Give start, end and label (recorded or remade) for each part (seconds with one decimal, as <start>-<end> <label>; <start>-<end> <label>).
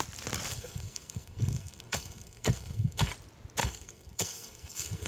0.0-0.5 recorded; 0.5-3.1 remade; 3.1-3.6 recorded; 3.6-5.1 remade